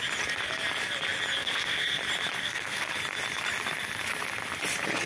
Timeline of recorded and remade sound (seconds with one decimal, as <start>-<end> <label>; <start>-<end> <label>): 0.0-1.4 recorded; 1.4-2.0 remade; 2.0-2.4 recorded; 2.4-2.9 remade; 2.9-5.1 recorded